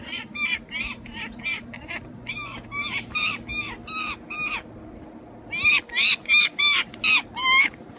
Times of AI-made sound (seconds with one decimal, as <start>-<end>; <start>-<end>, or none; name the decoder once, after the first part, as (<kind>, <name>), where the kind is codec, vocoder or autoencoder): 0.0-3.5 (vocoder, BigVGAN v2); 5.8-6.9; 7.6-8.0